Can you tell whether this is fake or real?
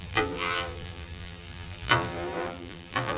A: fake